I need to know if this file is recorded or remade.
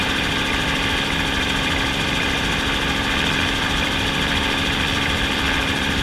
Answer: remade